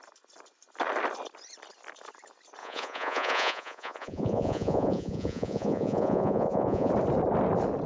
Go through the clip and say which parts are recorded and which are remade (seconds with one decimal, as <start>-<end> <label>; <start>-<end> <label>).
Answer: 0.0-2.6 recorded; 2.6-6.9 remade; 6.9-7.9 recorded